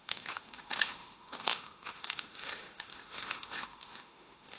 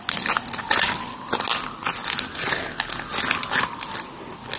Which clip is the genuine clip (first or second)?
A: second